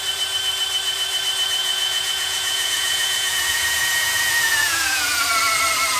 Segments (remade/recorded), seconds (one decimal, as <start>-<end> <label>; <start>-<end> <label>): 0.0-1.6 recorded; 1.6-5.2 remade; 5.2-6.0 recorded